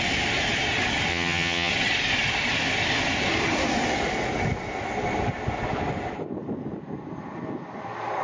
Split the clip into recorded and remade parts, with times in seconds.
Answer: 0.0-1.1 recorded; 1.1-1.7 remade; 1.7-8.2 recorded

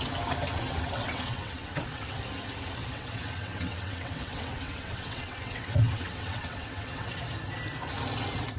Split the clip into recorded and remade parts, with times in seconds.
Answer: 0.0-0.5 recorded; 0.5-2.2 remade; 2.2-2.8 recorded; 2.8-7.2 remade; 7.2-8.6 recorded

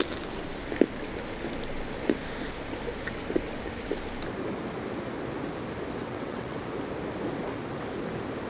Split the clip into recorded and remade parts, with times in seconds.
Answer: 0.0-6.0 recorded; 6.0-6.6 remade; 6.6-8.5 recorded